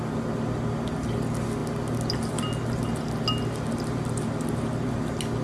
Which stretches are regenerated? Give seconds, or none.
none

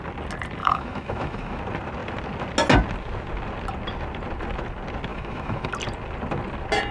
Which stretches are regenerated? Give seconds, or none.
0.6-1.6 (autoencoder, DAC-VAE); 5.1-5.7

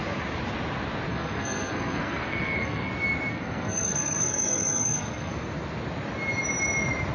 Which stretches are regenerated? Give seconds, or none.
1.1-2.9 (codec, SNAC); 3.3-5.3

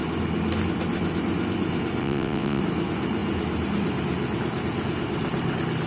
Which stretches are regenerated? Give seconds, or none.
2.0-2.6 (vocoder, WaveNeXt)

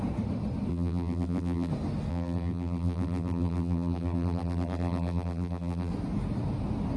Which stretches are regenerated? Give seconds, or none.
0.7-1.7 (vocoder, BigVGAN v2); 2.1-5.9